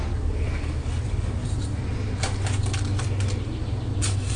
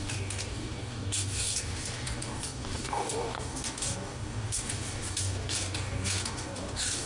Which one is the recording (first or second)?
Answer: first